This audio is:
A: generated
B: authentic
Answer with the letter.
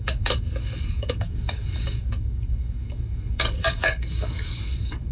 A